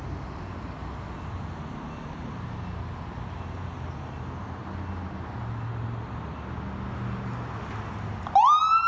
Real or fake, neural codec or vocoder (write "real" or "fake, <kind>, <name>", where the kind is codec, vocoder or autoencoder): real